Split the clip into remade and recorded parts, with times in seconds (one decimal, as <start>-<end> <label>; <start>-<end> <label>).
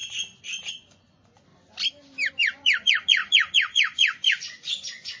0.0-0.7 recorded; 0.7-1.5 remade; 1.5-2.3 recorded; 2.3-5.2 remade